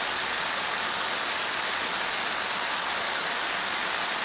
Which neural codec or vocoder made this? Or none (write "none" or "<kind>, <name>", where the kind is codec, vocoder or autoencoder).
none